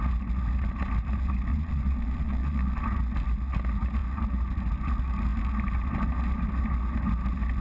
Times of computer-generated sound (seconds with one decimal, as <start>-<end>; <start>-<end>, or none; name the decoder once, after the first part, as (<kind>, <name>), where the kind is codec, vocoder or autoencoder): 1.5-2.8 (vocoder, Vocos)